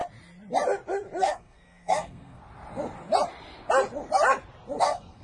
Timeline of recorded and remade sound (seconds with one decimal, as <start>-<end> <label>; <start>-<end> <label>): 0.0-1.2 recorded; 1.2-2.4 remade; 2.4-4.8 recorded; 4.8-5.2 remade